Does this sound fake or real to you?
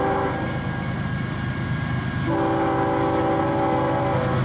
real